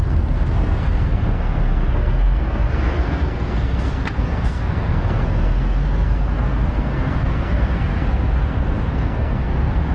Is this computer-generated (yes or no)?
yes